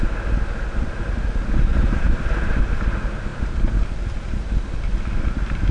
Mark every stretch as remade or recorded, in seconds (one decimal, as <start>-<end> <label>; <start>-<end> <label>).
0.0-1.7 recorded; 1.7-2.6 remade; 2.6-5.7 recorded